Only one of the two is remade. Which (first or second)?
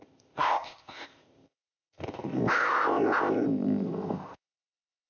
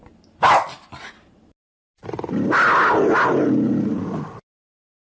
first